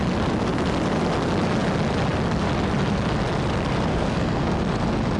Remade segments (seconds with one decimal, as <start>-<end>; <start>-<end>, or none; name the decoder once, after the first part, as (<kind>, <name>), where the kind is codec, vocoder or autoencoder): 3.9-4.6 (codec, SNAC)